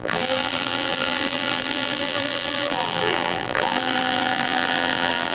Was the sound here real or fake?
fake